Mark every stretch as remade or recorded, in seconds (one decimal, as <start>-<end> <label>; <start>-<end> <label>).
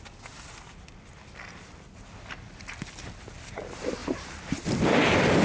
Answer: 0.0-5.4 recorded